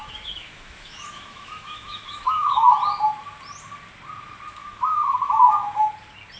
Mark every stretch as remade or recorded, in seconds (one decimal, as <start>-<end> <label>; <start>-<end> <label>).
0.0-2.7 remade; 2.7-4.6 recorded; 4.6-5.9 remade; 5.9-6.4 recorded